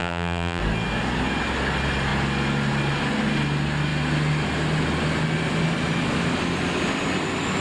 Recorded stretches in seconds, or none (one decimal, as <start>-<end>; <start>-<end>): 0.6-7.6